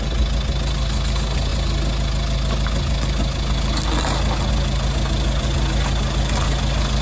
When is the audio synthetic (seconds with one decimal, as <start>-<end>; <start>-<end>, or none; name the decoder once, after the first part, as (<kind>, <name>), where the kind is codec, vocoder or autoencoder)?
none